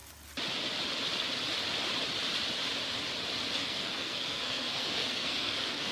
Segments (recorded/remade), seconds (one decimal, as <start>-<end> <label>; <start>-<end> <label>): 0.0-3.5 recorded; 3.5-5.9 remade